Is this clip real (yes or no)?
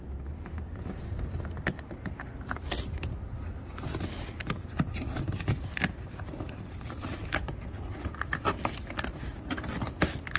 yes